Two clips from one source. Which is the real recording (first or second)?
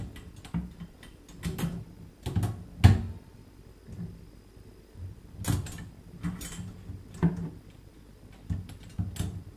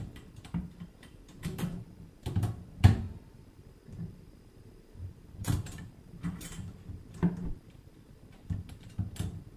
first